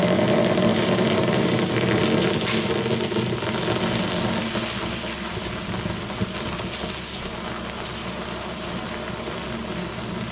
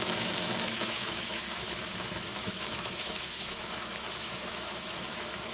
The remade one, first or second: second